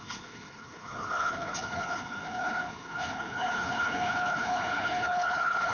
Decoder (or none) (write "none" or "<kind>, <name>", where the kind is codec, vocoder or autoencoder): codec, HILCodec